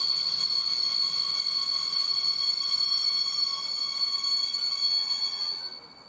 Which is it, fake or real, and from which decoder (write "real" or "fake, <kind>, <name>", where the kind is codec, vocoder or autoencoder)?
real